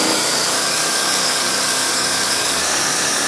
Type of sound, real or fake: fake